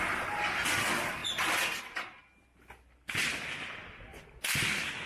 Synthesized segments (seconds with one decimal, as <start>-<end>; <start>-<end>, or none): 1.2-2.2